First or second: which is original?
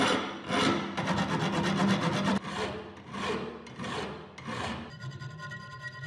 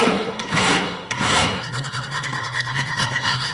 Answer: first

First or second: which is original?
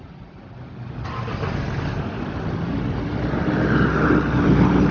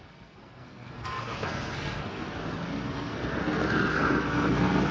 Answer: first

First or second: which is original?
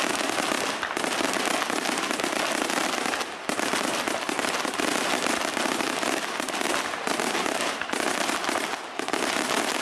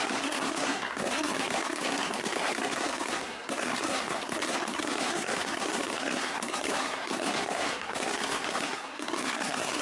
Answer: first